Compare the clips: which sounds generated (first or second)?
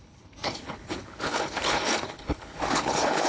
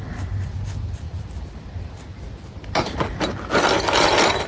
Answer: first